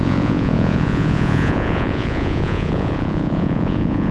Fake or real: fake